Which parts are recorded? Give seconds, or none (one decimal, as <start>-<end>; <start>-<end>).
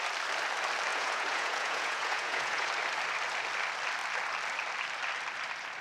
0.0-0.9; 2.7-5.8